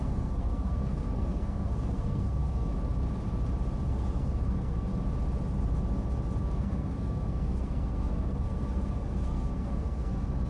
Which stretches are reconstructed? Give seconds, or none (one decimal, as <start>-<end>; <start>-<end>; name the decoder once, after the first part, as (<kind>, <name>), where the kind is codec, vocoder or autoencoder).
0.0-2.7 (codec, SNAC); 3.9-4.9; 6.4-10.5